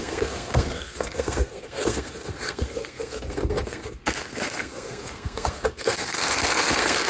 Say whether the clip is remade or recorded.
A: remade